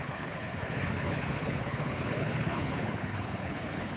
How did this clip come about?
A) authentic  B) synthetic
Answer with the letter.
B